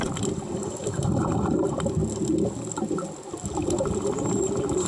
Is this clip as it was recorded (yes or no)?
yes